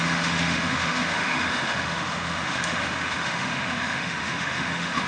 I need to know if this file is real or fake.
fake